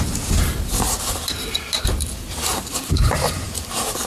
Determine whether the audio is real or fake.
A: fake